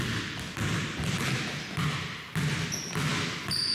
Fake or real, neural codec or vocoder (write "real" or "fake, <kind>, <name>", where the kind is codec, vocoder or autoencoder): real